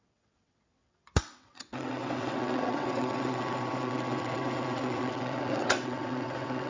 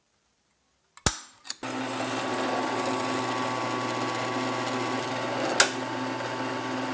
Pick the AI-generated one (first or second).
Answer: first